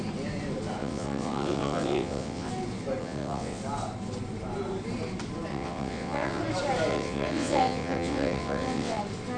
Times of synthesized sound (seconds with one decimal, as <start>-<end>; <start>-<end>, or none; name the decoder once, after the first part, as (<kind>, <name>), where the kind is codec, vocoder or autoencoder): 0.8-2.5 (vocoder, WaveNeXt); 3.0-3.6; 5.5-6.4; 6.9-9.0